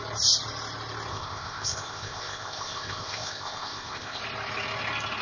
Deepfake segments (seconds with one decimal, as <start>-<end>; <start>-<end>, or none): 1.1-4.2

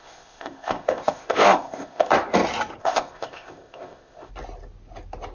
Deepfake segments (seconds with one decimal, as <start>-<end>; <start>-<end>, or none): 0.0-2.1; 2.8-4.3

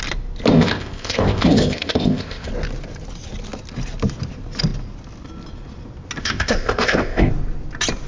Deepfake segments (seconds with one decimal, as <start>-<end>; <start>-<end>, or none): 0.5-2.5; 6.2-7.3

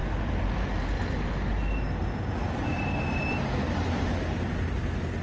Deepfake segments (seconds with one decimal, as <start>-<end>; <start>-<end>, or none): none

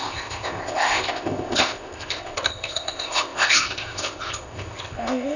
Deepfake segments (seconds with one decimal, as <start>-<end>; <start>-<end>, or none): 0.0-5.4